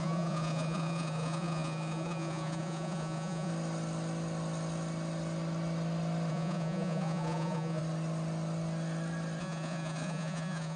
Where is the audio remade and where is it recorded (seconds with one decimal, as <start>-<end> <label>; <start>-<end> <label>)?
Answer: 0.0-3.5 remade; 3.5-6.3 recorded; 6.3-7.8 remade; 7.8-9.4 recorded; 9.4-10.8 remade